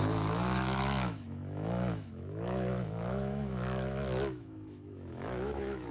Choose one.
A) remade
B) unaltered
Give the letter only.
A